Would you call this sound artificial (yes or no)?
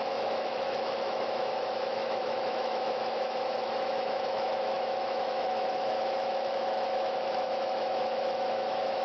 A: yes